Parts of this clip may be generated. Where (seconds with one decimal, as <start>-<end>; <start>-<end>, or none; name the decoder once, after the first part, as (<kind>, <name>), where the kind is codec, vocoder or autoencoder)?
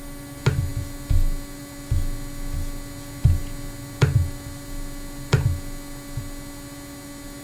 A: none